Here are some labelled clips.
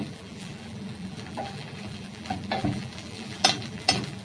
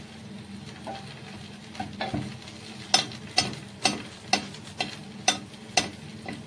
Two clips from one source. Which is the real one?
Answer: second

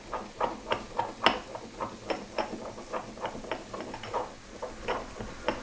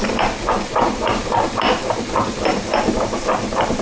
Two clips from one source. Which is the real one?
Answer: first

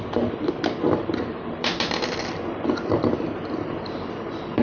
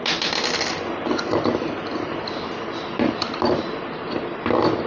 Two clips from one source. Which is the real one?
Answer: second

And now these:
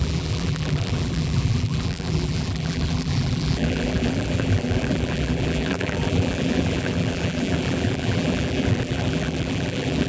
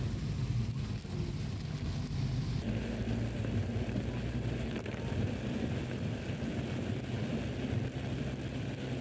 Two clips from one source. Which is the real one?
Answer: second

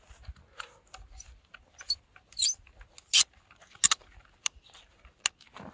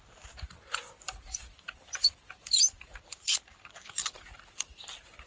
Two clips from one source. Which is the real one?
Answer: first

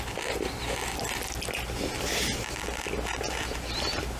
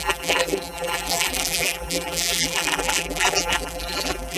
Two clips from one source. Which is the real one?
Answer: first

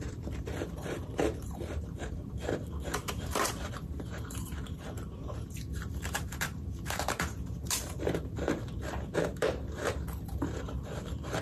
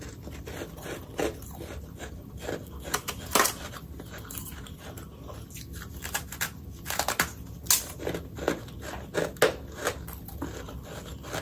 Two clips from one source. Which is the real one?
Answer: second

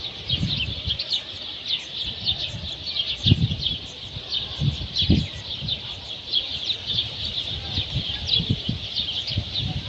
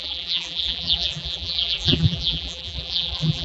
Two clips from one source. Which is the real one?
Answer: first